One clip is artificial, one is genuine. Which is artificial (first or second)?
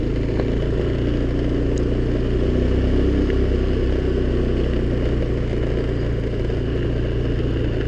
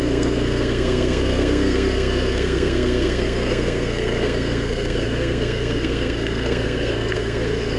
second